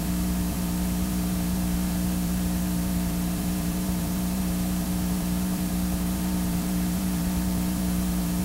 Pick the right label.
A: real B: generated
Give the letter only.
B